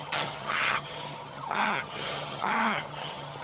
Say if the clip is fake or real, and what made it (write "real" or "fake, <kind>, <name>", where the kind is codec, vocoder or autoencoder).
fake, vocoder, HiFi-GAN